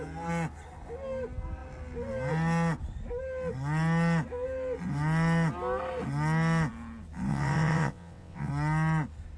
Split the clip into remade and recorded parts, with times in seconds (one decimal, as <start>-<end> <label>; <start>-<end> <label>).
0.0-7.3 recorded; 7.3-8.5 remade; 8.5-9.4 recorded